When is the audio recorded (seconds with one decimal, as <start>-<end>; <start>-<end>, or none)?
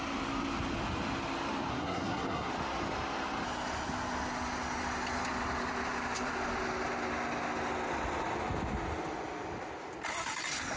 0.0-1.7; 2.5-10.8